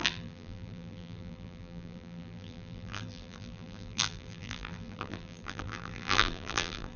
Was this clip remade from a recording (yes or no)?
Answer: yes